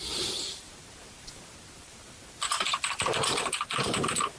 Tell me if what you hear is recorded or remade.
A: remade